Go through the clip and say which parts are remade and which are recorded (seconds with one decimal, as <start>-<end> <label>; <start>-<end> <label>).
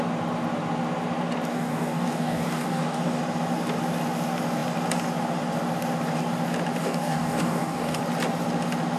0.0-1.5 recorded; 1.5-3.2 remade; 3.2-6.8 recorded; 6.8-8.0 remade; 8.0-9.0 recorded